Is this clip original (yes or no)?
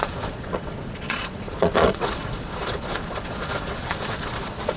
no